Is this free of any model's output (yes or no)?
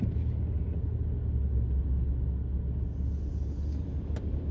yes